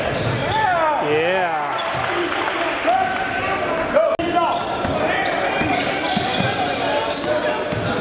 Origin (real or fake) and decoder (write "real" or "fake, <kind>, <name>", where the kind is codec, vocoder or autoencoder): real